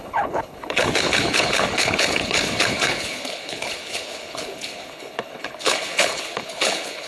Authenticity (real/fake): fake